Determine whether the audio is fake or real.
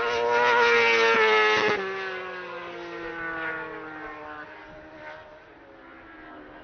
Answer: real